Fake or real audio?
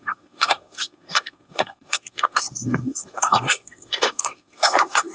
fake